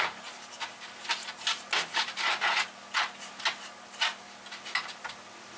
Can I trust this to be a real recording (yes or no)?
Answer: yes